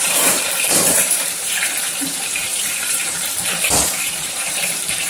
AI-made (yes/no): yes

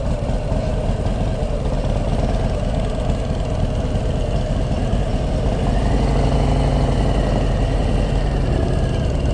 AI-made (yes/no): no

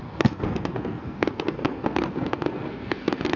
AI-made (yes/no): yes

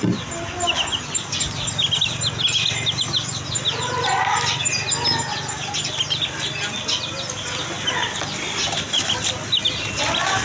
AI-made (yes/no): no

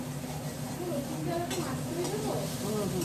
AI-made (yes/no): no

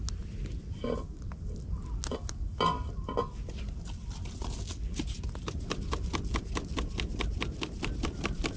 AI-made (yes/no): no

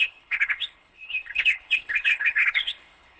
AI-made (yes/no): yes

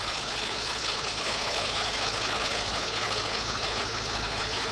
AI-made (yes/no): yes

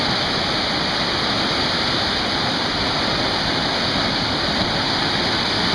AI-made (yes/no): no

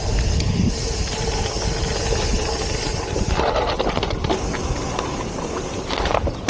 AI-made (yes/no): no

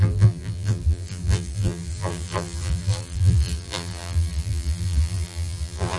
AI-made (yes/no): yes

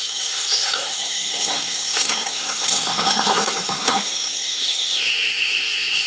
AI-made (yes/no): yes